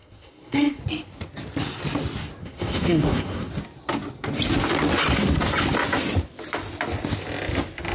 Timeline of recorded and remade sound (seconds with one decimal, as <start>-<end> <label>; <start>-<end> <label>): 0.0-0.8 remade; 0.8-2.4 recorded; 2.4-3.5 remade; 3.5-7.9 recorded